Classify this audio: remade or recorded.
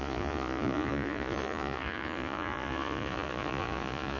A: remade